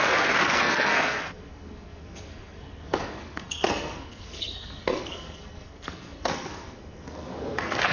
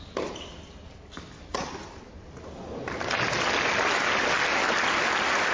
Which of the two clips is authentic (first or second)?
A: second